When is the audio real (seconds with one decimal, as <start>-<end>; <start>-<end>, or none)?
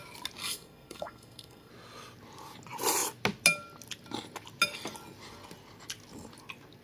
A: 0.0-0.4; 1.7-6.8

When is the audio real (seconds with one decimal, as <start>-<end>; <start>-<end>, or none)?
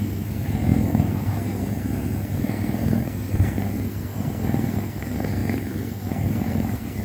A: none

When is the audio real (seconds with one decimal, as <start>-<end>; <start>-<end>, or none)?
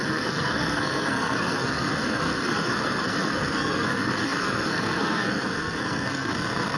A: none